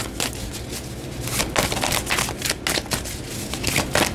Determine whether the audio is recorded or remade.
recorded